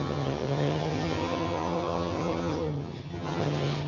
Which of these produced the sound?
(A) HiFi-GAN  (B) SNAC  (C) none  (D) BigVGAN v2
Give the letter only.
A